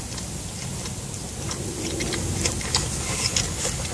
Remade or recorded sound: recorded